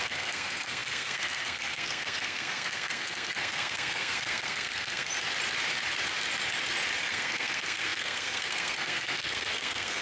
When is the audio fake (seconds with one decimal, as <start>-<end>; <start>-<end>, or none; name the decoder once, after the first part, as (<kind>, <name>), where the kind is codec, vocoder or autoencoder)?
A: 0.0-5.1 (codec, SNAC); 7.1-10.0